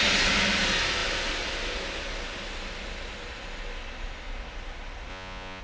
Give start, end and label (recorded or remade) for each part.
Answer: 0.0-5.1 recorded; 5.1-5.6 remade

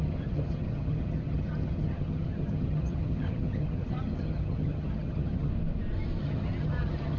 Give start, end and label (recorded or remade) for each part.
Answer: 0.0-5.5 remade; 5.5-6.2 recorded; 6.2-7.2 remade

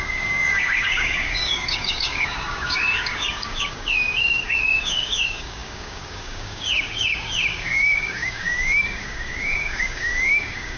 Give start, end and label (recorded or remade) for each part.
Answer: 0.0-10.8 remade

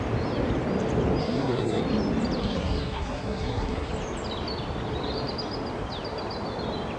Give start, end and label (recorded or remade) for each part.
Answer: 0.0-1.2 recorded; 1.2-1.8 remade; 1.8-2.4 recorded; 2.4-3.9 remade; 3.9-7.0 recorded